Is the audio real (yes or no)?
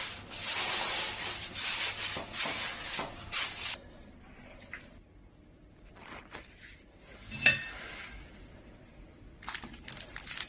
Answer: yes